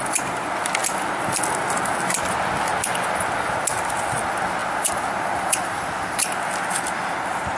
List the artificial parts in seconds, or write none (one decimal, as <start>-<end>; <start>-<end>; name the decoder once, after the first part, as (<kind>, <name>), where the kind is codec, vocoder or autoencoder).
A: 0.8-2.0 (vocoder, BigVGAN v2); 4.6-6.3